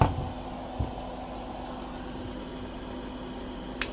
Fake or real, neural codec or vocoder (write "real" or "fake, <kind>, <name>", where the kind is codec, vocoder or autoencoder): real